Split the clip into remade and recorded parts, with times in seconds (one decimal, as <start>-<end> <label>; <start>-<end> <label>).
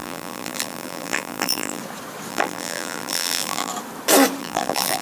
0.0-1.8 remade; 1.8-2.3 recorded; 2.3-3.7 remade; 3.7-4.4 recorded; 4.4-5.0 remade